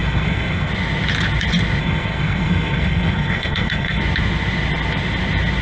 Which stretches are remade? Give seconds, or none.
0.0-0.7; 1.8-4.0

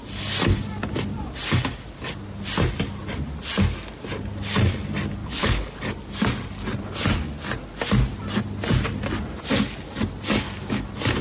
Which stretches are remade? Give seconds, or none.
5.2-5.8

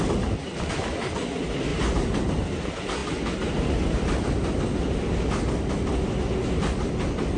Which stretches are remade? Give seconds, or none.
1.7-2.3

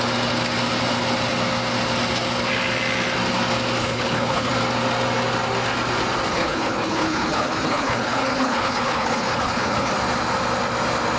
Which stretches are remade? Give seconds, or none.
3.8-4.5; 6.3-9.9

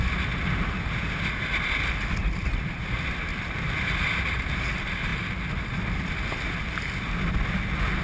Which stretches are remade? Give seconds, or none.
3.3-4.6

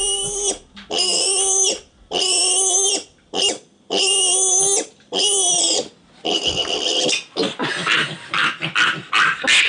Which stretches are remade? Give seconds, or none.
none